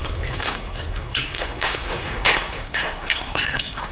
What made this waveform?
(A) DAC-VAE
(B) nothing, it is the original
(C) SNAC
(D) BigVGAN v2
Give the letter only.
C